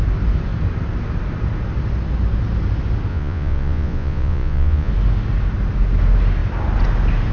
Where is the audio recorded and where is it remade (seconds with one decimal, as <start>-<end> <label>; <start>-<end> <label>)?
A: 0.0-3.1 recorded; 3.1-4.9 remade; 4.9-7.3 recorded